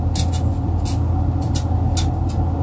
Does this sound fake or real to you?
real